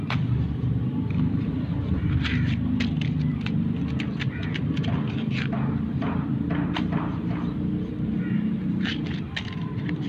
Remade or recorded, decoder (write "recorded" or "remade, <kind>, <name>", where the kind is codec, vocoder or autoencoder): remade, vocoder, BigVGAN v2